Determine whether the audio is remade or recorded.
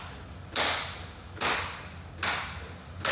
recorded